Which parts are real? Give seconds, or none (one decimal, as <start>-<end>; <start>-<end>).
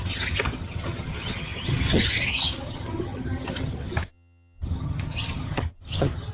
none